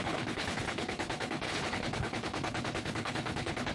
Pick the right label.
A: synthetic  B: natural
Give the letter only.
A